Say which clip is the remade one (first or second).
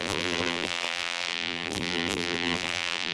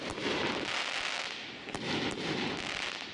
first